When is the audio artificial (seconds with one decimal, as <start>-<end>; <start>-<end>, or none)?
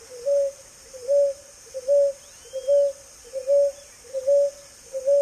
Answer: none